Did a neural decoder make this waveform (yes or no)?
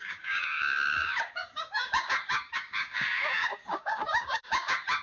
yes